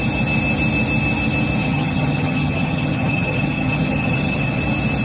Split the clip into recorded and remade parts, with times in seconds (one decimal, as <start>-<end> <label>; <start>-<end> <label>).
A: 0.0-1.6 recorded; 1.6-4.6 remade; 4.6-5.0 recorded